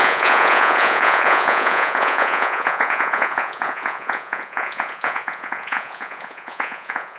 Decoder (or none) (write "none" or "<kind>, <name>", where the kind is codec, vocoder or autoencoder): vocoder, Vocos